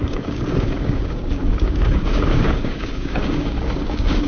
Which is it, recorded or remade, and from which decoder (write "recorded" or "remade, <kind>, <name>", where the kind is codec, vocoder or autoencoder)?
remade, codec, DAC